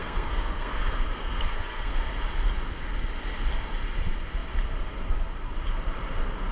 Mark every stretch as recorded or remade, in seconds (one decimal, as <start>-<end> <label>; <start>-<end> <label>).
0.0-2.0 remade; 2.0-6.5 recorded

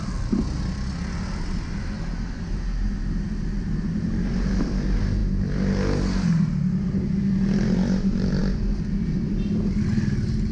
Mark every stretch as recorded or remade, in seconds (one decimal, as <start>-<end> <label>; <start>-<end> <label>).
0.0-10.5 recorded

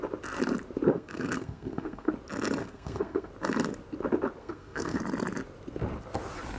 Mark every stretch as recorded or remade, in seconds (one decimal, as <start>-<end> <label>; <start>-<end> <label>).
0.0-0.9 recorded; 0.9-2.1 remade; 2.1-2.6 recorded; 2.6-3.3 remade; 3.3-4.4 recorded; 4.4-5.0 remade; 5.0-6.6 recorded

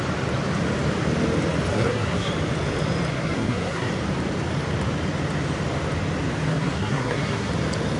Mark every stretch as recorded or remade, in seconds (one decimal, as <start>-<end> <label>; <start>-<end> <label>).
0.0-1.7 recorded; 1.7-2.3 remade; 2.3-3.1 recorded; 3.1-3.9 remade; 3.9-6.5 recorded; 6.5-7.5 remade; 7.5-8.0 recorded

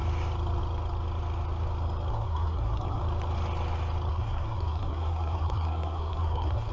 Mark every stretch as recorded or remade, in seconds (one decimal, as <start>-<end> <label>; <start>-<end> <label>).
0.0-2.1 recorded; 2.1-3.0 remade; 3.0-4.1 recorded; 4.1-6.7 remade